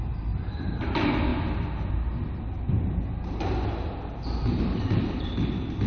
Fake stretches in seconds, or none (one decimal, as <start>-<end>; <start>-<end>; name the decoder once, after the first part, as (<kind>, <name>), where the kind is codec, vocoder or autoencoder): none

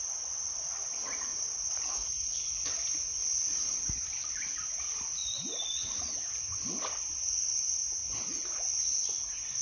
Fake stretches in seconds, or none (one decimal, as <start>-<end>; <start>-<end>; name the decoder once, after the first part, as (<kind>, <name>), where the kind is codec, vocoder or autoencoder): 1.3-2.4 (vocoder, Vocos); 5.2-6.1

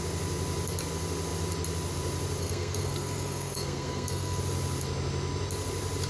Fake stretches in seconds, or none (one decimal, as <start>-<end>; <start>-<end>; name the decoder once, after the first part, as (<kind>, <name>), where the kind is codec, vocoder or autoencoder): 2.4-4.4 (codec, SNAC)

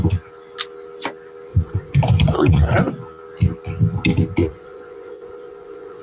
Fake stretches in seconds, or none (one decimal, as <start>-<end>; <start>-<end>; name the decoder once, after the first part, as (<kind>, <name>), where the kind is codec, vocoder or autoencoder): 1.5-2.9 (vocoder, Vocos); 4.4-6.0

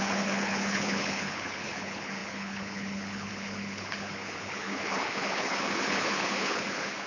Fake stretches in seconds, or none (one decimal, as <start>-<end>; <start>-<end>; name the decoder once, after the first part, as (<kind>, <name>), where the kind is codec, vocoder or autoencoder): 0.0-7.1 (codec, HILCodec)

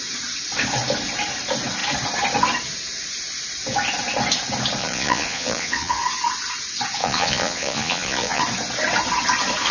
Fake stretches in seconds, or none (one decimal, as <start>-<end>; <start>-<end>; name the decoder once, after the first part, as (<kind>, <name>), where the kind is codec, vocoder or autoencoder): 4.8-6.0 (vocoder, Vocos); 7.0-8.4

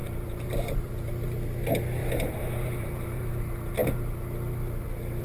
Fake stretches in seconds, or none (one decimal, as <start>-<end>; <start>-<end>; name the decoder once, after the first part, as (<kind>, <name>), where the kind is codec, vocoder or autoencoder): 0.0-1.1 (vocoder, BigVGAN v2); 2.0-3.4

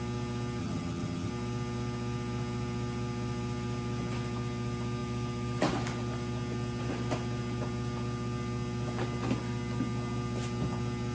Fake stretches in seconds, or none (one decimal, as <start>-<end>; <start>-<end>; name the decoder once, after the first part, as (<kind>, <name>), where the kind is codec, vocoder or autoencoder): 0.6-1.3 (vocoder, HiFi-GAN)